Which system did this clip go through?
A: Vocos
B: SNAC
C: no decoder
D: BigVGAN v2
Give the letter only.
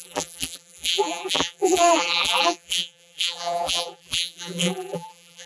D